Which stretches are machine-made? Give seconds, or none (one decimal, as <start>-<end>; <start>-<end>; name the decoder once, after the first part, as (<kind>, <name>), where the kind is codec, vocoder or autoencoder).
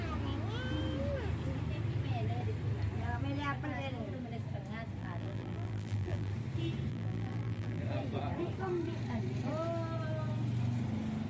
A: 5.0-6.3 (vocoder, BigVGAN v2); 6.9-7.8